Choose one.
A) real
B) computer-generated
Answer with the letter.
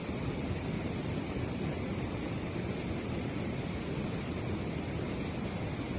A